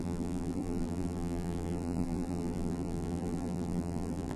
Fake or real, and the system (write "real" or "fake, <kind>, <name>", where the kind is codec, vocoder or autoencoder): fake, vocoder, BigVGAN v2